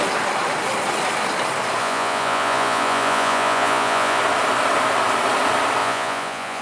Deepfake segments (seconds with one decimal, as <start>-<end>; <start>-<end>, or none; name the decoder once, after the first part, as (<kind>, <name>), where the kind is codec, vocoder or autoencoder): 1.8-4.2 (vocoder, Vocos); 5.8-6.6